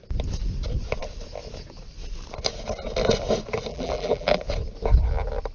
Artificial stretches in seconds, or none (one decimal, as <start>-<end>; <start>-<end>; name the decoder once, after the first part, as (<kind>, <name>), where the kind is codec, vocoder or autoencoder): 3.7-4.4 (vocoder, BigVGAN v2)